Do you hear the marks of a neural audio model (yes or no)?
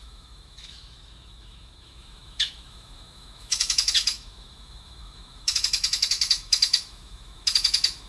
yes